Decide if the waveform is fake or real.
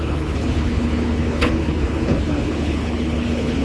fake